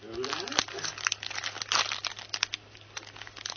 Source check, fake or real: real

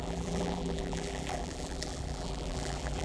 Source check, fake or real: fake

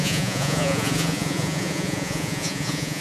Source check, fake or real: fake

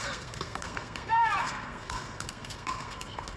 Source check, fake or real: fake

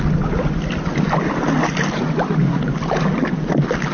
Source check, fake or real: real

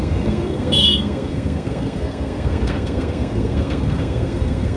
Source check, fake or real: fake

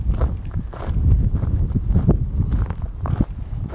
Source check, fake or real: real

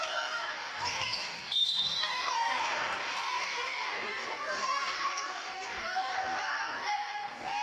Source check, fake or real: fake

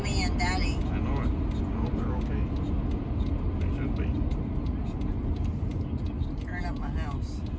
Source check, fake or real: real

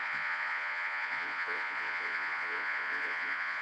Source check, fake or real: fake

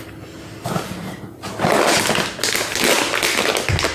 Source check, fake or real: real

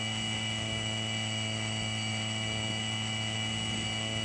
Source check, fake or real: fake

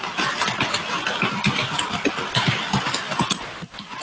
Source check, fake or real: real